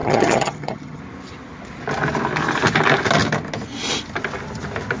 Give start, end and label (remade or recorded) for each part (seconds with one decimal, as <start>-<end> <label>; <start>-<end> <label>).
0.0-1.0 remade; 1.0-5.0 recorded